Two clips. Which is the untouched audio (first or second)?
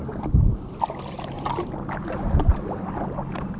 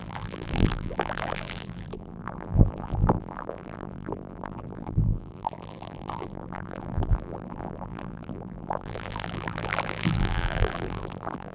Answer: first